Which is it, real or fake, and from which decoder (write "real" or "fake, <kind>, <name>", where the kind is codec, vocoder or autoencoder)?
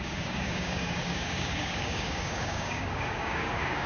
fake, codec, DAC